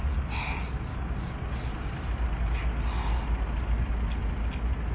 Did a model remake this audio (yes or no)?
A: no